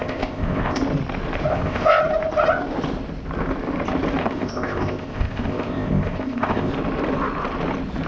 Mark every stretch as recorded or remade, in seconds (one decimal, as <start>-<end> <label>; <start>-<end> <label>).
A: 0.0-0.8 remade; 0.8-1.5 recorded; 1.5-2.0 remade; 2.0-4.2 recorded; 4.2-6.7 remade; 6.7-8.1 recorded